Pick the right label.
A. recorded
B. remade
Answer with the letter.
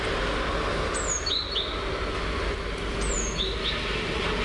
A